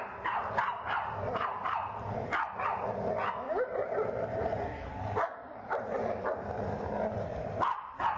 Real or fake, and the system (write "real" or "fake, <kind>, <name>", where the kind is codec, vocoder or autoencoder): real